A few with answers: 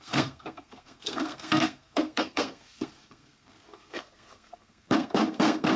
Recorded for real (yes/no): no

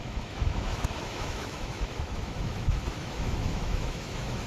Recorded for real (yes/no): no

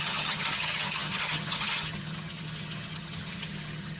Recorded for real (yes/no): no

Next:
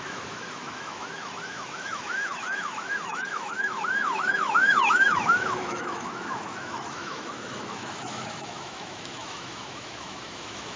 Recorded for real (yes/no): no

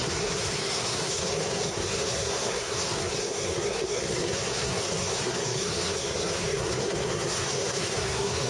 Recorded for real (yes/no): no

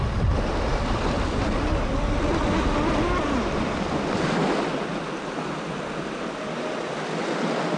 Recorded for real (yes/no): yes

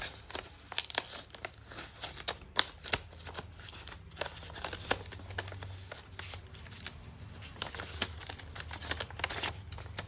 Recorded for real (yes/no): yes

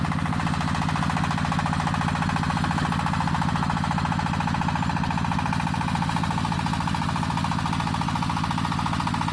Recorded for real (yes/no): yes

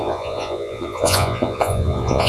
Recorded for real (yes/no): no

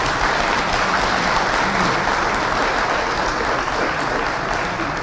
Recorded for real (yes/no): yes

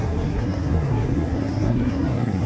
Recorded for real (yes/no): no